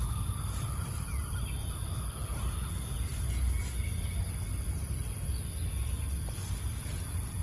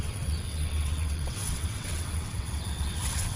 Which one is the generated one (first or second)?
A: second